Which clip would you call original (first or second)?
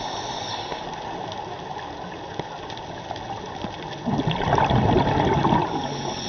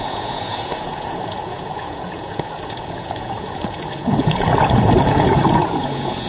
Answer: first